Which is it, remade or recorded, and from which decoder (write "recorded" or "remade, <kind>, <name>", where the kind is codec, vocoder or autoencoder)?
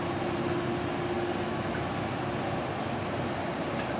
recorded